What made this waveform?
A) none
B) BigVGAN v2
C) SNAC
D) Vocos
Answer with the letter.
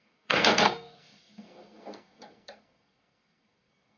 C